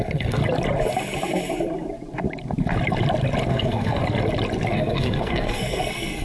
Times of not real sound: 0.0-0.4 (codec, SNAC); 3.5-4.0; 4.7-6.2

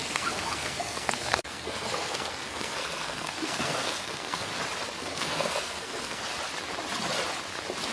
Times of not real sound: 0.0-4.5 (codec, SNAC); 5.0-6.3

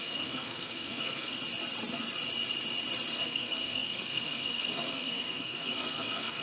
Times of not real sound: 0.0-1.4 (codec, SNAC); 3.1-6.4